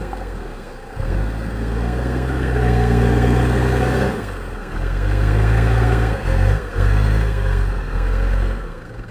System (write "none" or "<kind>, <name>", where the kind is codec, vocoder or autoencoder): codec, SNAC